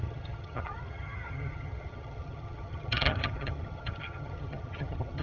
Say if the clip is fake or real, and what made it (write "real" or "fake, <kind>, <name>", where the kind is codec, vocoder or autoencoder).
fake, vocoder, HiFi-GAN